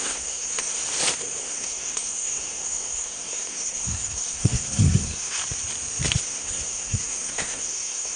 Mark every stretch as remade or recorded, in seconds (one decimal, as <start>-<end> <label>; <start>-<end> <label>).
0.0-0.8 remade; 0.8-1.4 recorded; 1.4-5.4 remade; 5.4-6.2 recorded; 6.2-8.2 remade